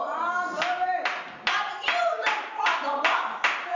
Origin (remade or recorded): recorded